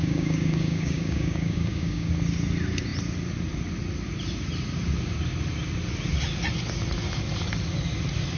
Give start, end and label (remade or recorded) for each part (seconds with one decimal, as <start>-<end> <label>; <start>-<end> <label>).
0.0-2.1 remade; 2.1-8.4 recorded

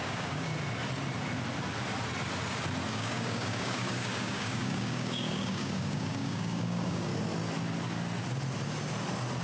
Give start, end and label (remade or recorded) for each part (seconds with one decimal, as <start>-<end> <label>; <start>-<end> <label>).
0.0-0.5 remade; 0.5-2.9 recorded; 2.9-7.1 remade; 7.1-9.4 recorded